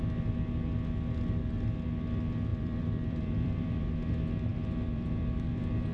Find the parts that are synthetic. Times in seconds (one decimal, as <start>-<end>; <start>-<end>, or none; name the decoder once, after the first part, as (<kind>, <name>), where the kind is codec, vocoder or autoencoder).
2.5-3.9 (vocoder, BigVGAN v2); 4.5-5.5